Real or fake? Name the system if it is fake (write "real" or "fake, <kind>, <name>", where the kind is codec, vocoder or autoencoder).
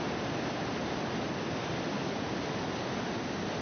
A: real